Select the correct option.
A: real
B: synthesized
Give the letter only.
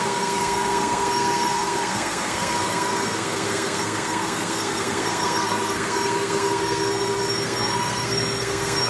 B